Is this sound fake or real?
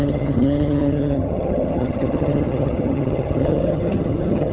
fake